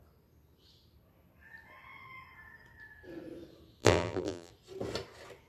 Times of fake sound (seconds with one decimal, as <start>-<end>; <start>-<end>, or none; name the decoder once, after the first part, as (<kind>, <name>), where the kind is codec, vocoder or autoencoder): 3.8-4.5 (vocoder, BigVGAN v2)